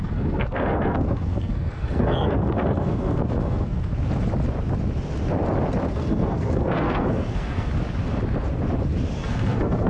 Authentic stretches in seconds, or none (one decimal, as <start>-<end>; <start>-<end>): 3.9-5.9; 7.7-9.2